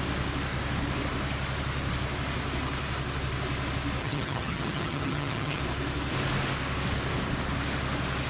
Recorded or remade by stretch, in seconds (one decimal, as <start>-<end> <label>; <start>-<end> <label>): 0.0-4.0 recorded; 4.0-5.6 remade; 5.6-8.3 recorded